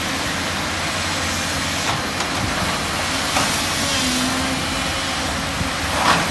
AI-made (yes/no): no